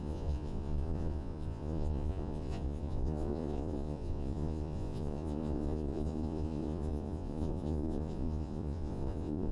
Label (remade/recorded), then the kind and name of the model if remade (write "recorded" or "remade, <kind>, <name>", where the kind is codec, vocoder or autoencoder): remade, vocoder, Vocos